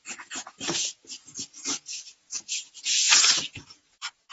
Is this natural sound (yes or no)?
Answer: no